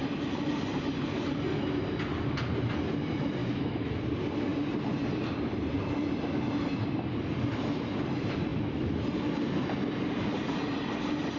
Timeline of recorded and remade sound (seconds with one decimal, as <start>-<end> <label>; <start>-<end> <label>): 0.0-3.4 recorded; 3.4-4.0 remade; 4.0-11.4 recorded